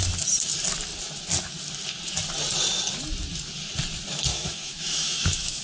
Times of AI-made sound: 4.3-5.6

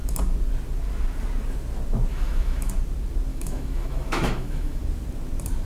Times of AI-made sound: 2.1-2.7; 3.3-4.8

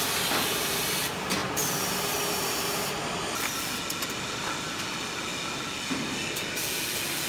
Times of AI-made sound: none

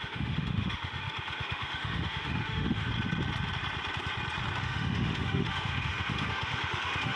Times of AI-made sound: 0.0-2.9; 4.6-7.2